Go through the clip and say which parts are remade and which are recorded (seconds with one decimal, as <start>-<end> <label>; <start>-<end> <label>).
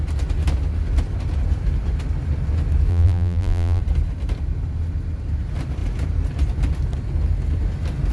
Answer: 0.0-2.9 recorded; 2.9-3.8 remade; 3.8-8.1 recorded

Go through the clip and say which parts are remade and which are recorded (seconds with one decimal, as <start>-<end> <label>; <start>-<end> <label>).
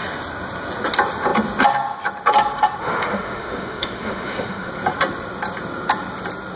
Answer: 0.0-2.8 recorded; 2.8-4.7 remade; 4.7-6.6 recorded